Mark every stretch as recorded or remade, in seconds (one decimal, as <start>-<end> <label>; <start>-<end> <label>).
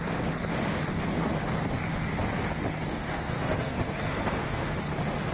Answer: 0.0-2.9 recorded; 2.9-4.8 remade; 4.8-5.3 recorded